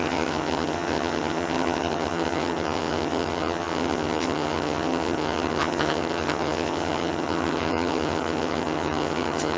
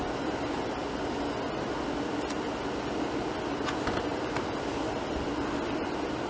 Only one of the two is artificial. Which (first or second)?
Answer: first